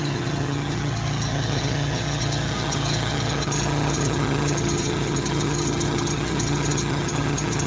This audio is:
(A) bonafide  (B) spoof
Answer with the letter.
B